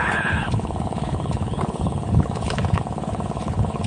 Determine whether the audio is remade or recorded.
remade